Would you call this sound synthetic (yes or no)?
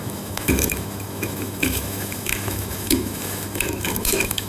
yes